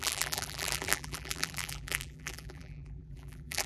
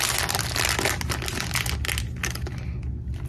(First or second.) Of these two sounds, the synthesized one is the first